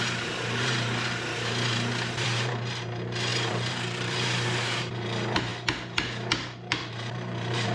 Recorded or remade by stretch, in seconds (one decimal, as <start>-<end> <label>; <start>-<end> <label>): 0.0-5.5 remade; 5.5-6.9 recorded; 6.9-7.7 remade